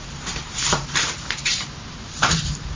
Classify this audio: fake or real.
fake